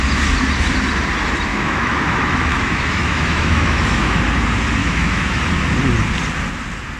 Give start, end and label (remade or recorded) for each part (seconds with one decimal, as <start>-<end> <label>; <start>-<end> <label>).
0.0-1.5 recorded; 1.5-4.2 remade; 4.2-4.8 recorded; 4.8-5.4 remade; 5.4-7.0 recorded